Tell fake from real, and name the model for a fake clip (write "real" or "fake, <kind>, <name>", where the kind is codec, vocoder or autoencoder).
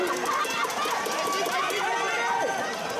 real